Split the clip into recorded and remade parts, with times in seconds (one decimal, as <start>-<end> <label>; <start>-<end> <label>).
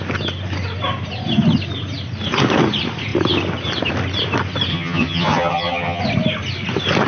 0.0-4.7 recorded; 4.7-6.0 remade; 6.0-7.1 recorded